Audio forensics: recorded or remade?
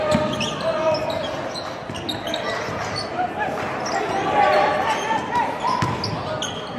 recorded